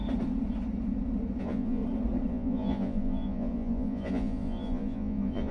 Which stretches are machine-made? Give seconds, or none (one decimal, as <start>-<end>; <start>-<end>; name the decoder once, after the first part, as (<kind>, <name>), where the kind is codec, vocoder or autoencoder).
1.4-1.8 (vocoder, Vocos); 2.3-5.5